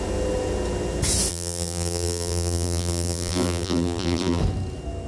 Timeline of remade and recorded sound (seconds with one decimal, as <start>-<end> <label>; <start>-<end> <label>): 0.0-1.3 recorded; 1.3-4.4 remade; 4.4-5.1 recorded